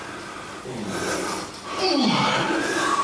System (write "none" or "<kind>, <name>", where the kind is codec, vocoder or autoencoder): none